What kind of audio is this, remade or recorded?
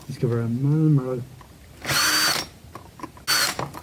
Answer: recorded